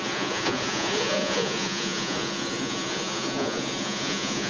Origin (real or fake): fake